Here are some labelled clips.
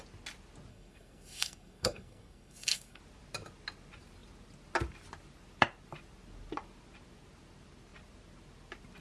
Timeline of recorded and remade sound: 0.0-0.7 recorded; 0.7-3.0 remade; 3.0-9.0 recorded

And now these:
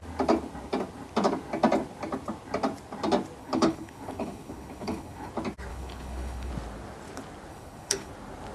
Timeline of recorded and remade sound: 0.0-3.4 recorded; 3.4-5.3 remade; 5.3-5.7 recorded; 5.7-6.5 remade; 6.5-7.5 recorded; 7.5-8.1 remade; 8.1-8.5 recorded

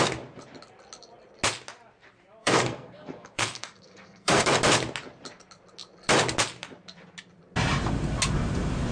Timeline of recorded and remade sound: 0.0-2.4 recorded; 2.4-4.5 remade; 4.5-8.9 recorded

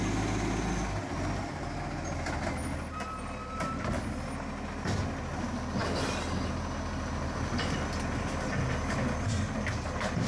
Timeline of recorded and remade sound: 0.0-10.3 recorded